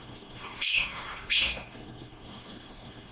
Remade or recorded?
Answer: remade